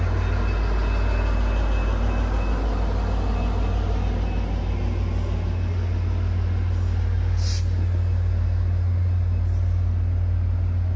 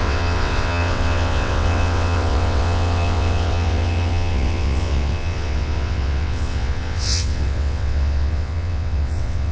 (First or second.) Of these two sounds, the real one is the first